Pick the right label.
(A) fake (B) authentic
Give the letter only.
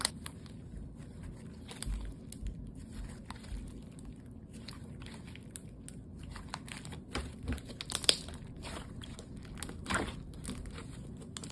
B